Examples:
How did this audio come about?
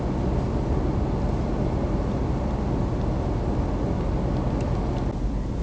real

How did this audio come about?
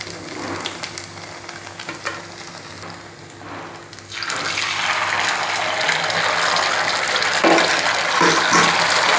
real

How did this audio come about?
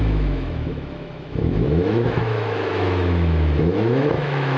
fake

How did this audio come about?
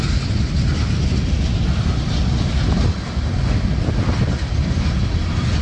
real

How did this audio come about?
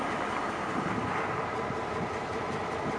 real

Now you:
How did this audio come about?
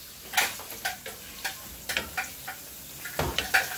real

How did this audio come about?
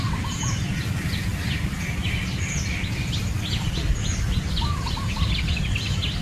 real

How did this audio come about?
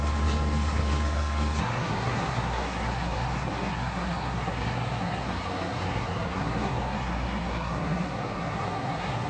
fake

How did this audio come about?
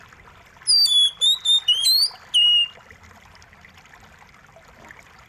real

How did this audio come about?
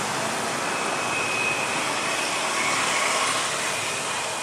real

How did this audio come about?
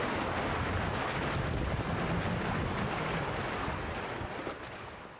real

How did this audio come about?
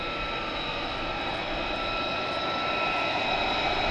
real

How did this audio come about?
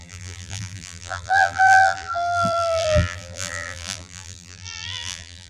fake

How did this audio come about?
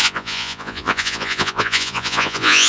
fake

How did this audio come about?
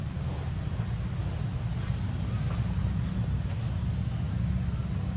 real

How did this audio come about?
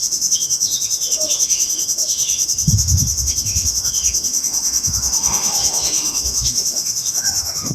fake